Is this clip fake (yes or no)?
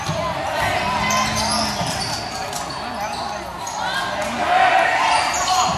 no